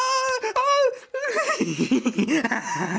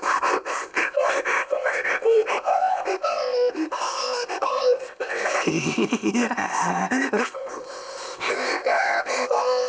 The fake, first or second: second